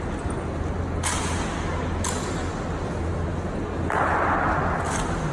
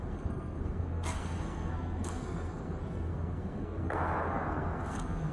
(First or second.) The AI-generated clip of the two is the second